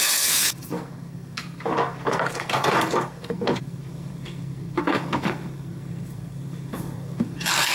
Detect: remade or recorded remade